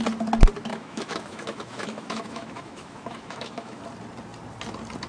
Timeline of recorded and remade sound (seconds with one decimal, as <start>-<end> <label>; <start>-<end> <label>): 0.0-0.7 recorded; 0.7-3.8 remade; 3.8-5.1 recorded